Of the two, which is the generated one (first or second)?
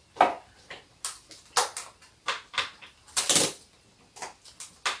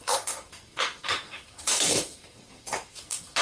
second